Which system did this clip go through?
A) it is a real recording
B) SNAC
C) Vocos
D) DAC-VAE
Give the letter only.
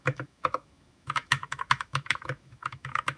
D